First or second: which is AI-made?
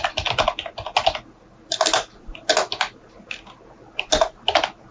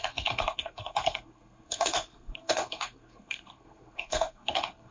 second